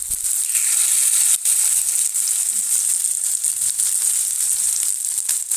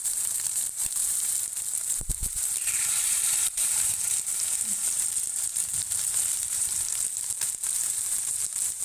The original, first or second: first